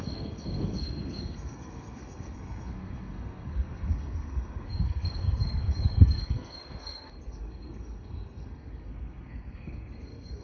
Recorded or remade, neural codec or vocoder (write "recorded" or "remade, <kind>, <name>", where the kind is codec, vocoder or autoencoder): remade, codec, SNAC